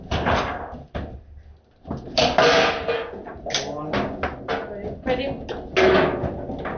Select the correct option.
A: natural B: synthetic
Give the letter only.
A